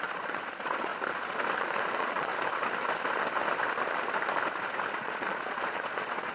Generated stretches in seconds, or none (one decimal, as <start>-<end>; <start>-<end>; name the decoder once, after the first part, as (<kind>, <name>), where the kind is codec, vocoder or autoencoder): 0.0-0.9 (vocoder, Vocos); 1.6-2.3; 4.9-6.3

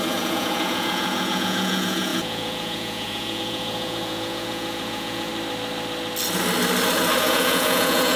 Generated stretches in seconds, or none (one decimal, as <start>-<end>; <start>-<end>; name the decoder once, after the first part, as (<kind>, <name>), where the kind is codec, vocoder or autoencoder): 0.0-5.3 (vocoder, Vocos); 7.2-8.2

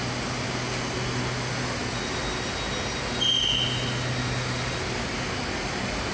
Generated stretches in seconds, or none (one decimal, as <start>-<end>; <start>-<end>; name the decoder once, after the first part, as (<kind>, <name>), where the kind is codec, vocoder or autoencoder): none

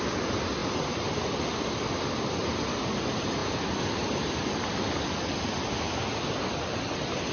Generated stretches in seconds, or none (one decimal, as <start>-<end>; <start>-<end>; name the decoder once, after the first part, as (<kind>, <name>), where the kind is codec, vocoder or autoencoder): none